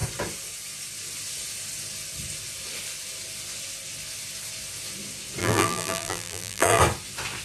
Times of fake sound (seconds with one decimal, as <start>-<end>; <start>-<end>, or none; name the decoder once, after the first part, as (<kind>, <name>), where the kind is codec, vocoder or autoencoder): 5.4-6.8 (vocoder, BigVGAN v2)